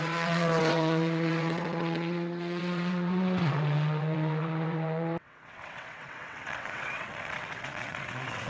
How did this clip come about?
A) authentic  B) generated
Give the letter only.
B